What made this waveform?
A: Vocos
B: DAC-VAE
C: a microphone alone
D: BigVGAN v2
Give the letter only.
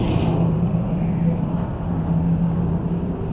C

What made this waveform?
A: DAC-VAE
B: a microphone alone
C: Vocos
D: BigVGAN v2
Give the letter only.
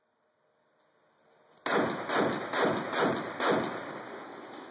B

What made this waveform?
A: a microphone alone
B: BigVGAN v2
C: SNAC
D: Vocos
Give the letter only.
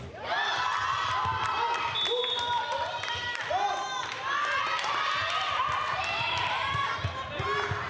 A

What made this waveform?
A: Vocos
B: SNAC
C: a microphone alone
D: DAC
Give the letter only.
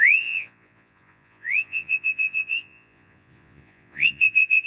A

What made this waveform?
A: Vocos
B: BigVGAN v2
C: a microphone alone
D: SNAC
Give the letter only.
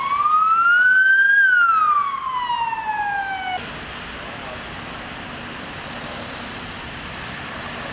C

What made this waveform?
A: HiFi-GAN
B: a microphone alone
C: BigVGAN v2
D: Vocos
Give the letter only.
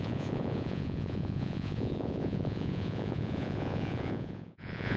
D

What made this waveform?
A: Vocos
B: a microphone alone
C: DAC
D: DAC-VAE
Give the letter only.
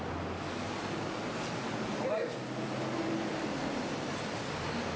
B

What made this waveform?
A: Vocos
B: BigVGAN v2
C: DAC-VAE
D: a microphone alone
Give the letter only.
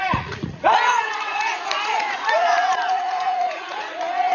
A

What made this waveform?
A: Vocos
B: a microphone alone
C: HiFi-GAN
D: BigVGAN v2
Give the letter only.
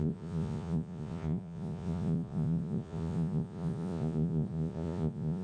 A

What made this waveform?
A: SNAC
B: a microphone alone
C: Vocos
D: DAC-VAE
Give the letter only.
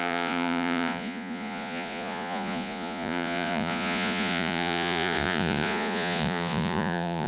C